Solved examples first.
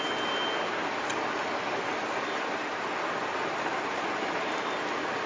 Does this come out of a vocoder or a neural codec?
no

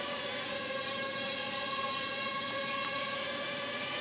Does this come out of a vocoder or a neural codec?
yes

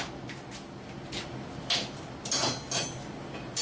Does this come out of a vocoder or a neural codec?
no